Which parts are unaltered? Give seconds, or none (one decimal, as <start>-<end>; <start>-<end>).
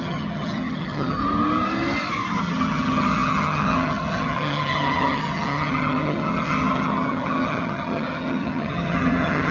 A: 1.2-2.4